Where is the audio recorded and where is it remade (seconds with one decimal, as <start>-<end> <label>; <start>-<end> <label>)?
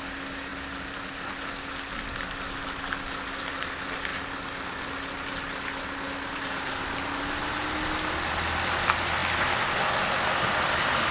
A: 0.0-11.1 recorded